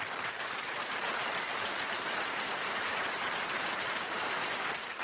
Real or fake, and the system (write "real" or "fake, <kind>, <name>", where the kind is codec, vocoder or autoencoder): fake, vocoder, BigVGAN v2